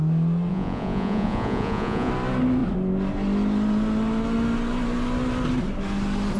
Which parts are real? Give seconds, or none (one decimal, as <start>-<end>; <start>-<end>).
0.0-0.5; 2.1-6.4